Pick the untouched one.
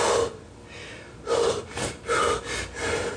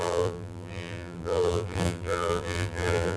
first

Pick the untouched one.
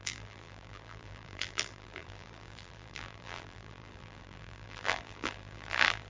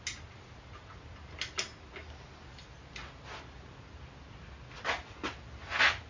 second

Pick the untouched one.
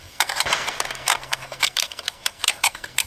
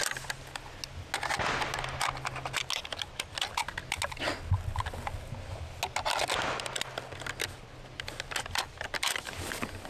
second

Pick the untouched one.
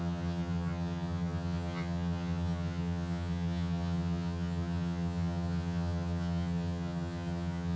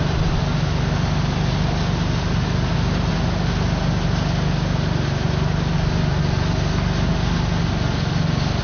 second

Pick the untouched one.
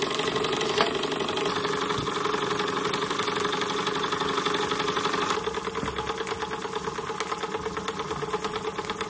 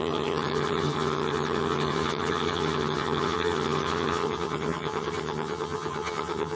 first